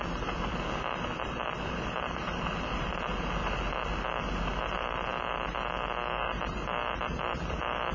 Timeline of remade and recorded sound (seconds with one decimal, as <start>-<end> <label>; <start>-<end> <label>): 0.0-2.3 recorded; 2.3-2.9 remade; 2.9-7.9 recorded